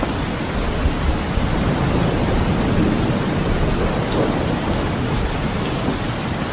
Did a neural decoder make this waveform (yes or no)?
no